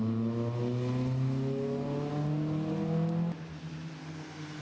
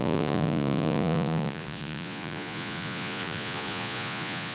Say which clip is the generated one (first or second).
second